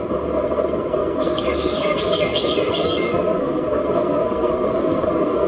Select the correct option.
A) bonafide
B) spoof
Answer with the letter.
B